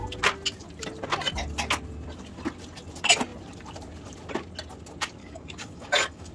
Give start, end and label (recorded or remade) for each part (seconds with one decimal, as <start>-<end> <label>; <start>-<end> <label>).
0.0-5.2 recorded; 5.2-6.3 remade